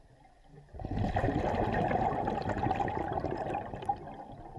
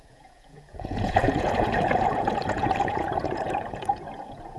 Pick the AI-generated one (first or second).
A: second